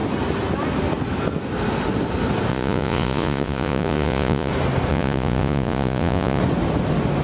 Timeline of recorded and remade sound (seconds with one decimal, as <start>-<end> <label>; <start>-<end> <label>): 0.0-2.5 recorded; 2.5-4.5 remade; 4.5-4.9 recorded; 4.9-6.4 remade; 6.4-7.2 recorded